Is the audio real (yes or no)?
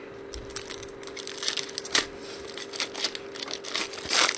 yes